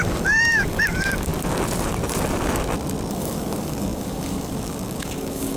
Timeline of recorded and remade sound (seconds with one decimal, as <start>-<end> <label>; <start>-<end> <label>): 0.0-1.3 remade; 1.3-3.1 recorded; 3.1-5.6 remade